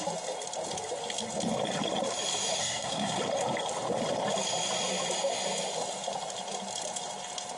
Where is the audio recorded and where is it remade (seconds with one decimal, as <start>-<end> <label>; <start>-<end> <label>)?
0.0-2.6 recorded; 2.6-3.2 remade; 3.2-7.6 recorded